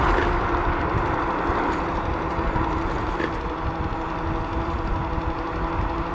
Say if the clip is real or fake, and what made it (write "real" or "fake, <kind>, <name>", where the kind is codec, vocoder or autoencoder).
real